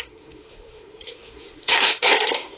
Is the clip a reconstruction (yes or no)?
yes